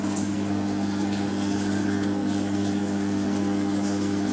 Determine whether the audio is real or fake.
fake